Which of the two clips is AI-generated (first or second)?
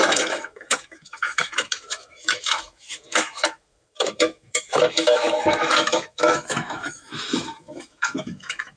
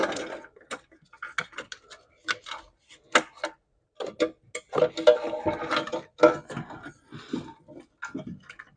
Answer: first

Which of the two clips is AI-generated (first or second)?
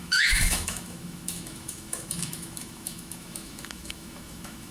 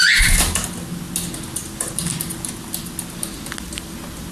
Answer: first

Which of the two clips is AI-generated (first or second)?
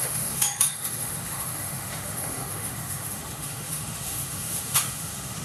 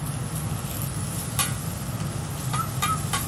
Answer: first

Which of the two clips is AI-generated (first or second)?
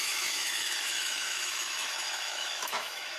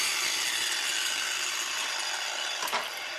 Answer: first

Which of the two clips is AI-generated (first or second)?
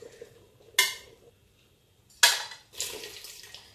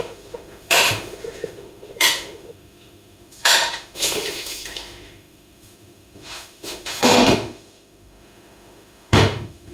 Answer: second